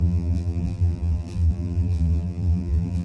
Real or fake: fake